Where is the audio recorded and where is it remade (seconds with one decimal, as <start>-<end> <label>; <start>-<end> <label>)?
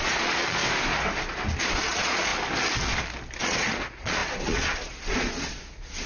0.0-0.6 remade; 0.6-1.7 recorded; 1.7-2.3 remade; 2.3-3.4 recorded; 3.4-6.1 remade